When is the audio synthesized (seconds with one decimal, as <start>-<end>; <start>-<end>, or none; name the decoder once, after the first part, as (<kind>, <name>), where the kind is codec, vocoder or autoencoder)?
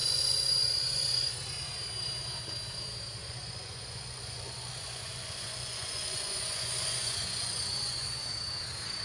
0.0-1.3 (vocoder, Vocos); 3.2-8.3